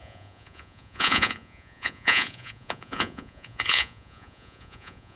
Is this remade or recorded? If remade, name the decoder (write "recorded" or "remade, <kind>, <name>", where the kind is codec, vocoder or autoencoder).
remade, vocoder, Vocos